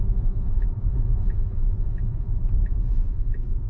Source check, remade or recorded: remade